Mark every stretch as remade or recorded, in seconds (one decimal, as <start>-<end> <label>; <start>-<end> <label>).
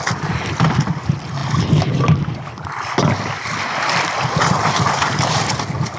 0.0-6.0 recorded